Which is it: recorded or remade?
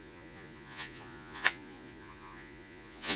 remade